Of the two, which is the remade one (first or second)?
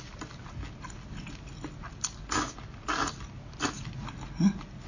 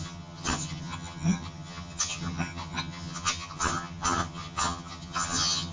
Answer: second